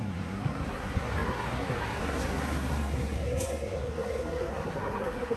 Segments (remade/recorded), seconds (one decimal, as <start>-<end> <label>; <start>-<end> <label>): 0.0-5.4 remade